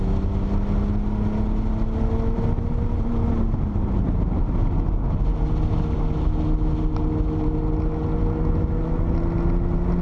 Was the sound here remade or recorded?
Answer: recorded